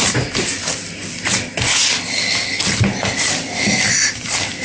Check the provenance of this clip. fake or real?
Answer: real